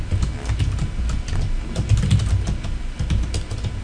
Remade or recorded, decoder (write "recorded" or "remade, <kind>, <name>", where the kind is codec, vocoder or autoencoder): recorded